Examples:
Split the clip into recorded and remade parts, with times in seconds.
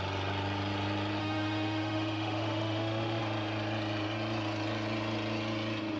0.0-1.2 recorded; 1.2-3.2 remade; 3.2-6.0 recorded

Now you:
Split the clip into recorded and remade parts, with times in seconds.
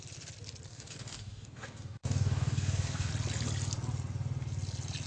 0.0-0.7 recorded; 0.7-3.1 remade; 3.1-5.1 recorded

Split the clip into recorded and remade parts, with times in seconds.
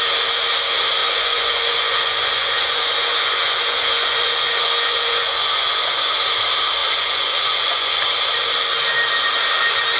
0.0-1.0 recorded; 1.0-6.1 remade; 6.1-6.8 recorded; 6.8-8.0 remade; 8.0-10.0 recorded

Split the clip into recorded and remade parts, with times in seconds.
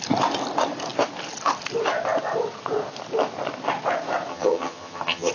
0.0-4.3 recorded; 4.3-5.3 remade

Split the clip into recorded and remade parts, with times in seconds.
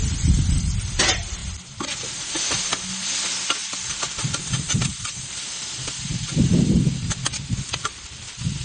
0.0-8.6 recorded